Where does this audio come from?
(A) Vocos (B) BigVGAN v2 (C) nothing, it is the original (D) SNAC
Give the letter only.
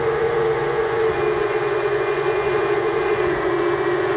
A